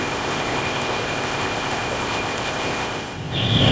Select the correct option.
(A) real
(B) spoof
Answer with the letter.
B